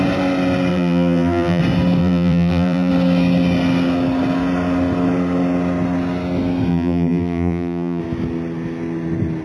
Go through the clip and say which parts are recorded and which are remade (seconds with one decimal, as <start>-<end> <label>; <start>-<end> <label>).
0.0-0.7 recorded; 0.7-1.6 remade; 1.6-2.0 recorded; 2.0-2.9 remade; 2.9-6.7 recorded; 6.7-8.0 remade; 8.0-9.4 recorded